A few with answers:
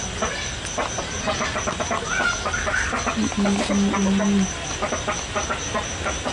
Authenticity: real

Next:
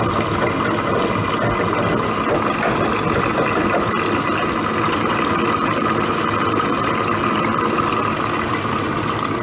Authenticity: real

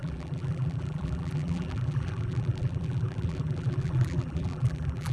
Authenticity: fake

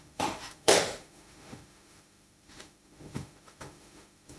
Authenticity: fake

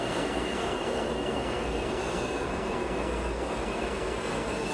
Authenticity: fake